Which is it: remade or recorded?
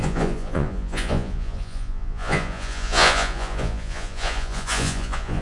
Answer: remade